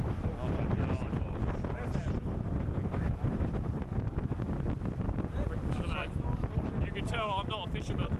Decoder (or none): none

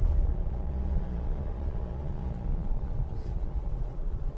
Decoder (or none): vocoder, Vocos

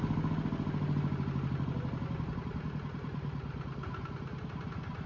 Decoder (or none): none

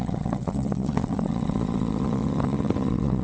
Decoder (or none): vocoder, Vocos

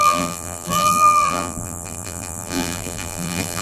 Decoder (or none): vocoder, BigVGAN v2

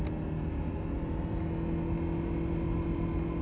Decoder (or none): none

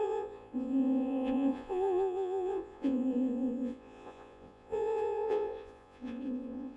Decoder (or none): vocoder, Vocos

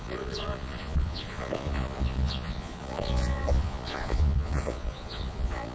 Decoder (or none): vocoder, Vocos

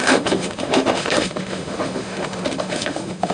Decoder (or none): autoencoder, DAC-VAE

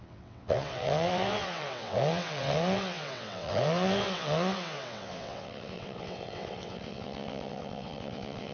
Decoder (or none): vocoder, WaveNeXt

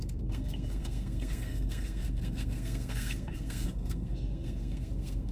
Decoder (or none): codec, SNAC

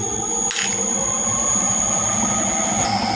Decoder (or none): none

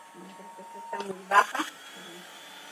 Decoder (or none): none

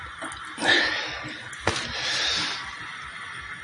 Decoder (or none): none